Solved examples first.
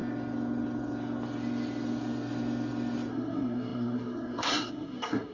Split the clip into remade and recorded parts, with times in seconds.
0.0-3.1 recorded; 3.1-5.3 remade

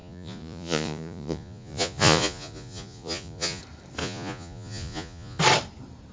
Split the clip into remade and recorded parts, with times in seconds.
0.0-3.6 remade; 3.6-4.0 recorded; 4.0-5.4 remade; 5.4-6.1 recorded

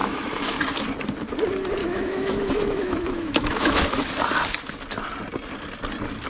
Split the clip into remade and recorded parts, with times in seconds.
0.0-0.6 remade; 0.6-1.8 recorded; 1.8-3.8 remade; 3.8-6.3 recorded

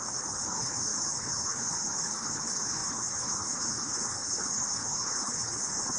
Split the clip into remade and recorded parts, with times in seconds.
0.0-6.0 remade

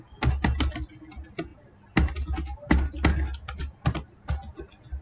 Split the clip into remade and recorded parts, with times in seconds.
0.0-5.0 recorded

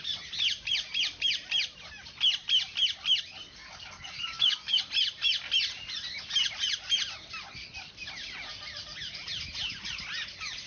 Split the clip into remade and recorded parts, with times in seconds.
0.0-3.6 recorded; 3.6-4.8 remade; 4.8-10.7 recorded

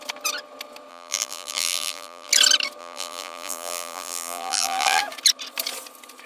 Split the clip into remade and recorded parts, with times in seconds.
0.0-0.9 recorded; 0.9-2.3 remade; 2.3-2.8 recorded; 2.8-5.0 remade; 5.0-6.3 recorded